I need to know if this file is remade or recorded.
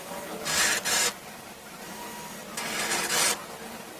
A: recorded